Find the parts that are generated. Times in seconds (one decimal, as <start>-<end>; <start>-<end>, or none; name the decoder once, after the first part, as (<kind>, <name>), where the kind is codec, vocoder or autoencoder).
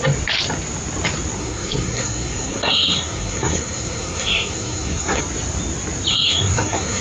1.4-5.2 (codec, SNAC); 6.1-7.0